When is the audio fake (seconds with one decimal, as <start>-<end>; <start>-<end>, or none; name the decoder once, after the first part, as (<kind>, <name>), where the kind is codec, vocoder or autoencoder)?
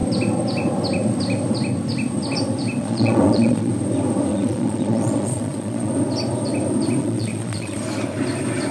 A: 2.8-3.7 (vocoder, Vocos); 4.3-5.9; 7.0-7.8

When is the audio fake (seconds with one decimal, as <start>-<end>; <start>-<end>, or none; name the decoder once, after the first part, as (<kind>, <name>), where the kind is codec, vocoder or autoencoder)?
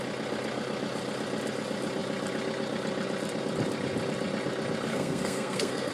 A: 4.9-5.9 (codec, SNAC)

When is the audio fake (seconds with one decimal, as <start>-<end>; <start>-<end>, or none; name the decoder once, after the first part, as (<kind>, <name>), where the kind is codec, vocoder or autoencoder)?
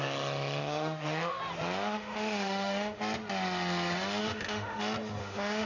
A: 0.6-1.4 (autoencoder, DAC-VAE); 1.9-3.0; 4.2-4.8; 5.2-5.7